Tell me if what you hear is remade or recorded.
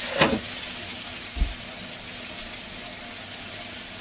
recorded